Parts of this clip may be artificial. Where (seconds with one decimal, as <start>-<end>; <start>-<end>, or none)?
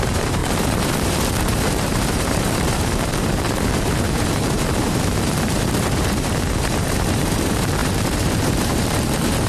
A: 0.0-9.5